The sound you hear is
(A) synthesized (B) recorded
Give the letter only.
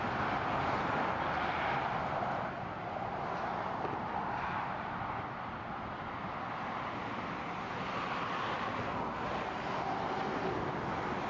B